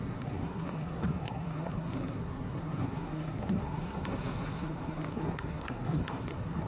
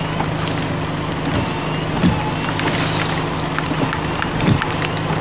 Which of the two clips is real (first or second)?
second